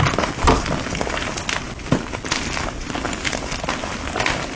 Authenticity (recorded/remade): remade